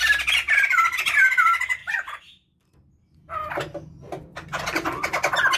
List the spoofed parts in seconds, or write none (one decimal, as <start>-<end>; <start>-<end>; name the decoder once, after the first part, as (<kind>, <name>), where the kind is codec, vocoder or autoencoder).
none